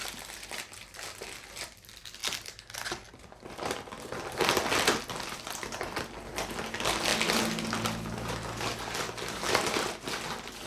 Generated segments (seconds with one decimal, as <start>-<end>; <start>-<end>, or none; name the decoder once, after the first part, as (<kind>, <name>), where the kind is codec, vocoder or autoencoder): 0.0-0.5 (vocoder, BigVGAN v2)